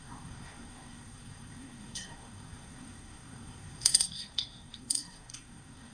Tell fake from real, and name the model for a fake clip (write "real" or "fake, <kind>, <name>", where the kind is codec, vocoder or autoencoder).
fake, codec, SNAC